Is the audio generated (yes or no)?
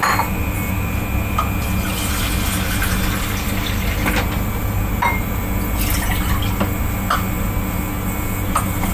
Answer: no